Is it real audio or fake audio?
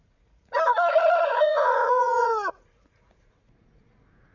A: fake